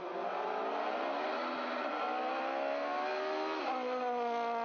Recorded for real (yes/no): yes